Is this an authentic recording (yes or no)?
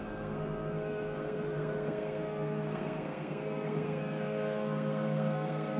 no